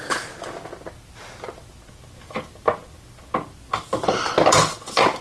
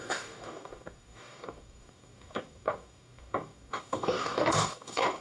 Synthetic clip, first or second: second